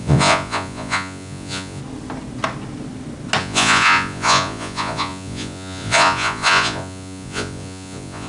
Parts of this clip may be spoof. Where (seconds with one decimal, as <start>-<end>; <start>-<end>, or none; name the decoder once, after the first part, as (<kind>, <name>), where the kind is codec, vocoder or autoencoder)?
0.0-1.8 (vocoder, Vocos); 3.4-8.3